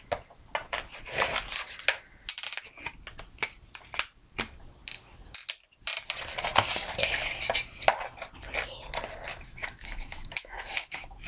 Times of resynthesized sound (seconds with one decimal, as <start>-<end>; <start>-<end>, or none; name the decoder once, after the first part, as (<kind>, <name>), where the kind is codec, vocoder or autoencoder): 9.3-11.3 (autoencoder, DAC-VAE)